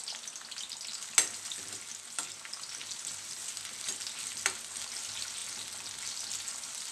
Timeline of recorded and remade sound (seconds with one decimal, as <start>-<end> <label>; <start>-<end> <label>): 0.0-6.9 recorded